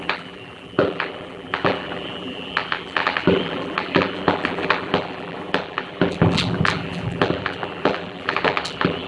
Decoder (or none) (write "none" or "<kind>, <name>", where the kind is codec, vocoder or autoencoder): vocoder, BigVGAN v2